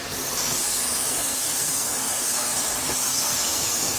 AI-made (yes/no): yes